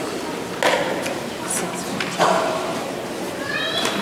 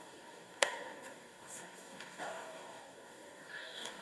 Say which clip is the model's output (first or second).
second